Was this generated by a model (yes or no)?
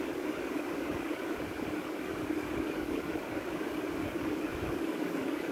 yes